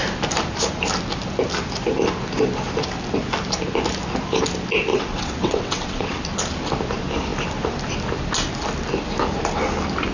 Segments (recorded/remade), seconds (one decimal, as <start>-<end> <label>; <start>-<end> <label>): 0.0-4.9 recorded; 4.9-6.2 remade; 6.2-10.1 recorded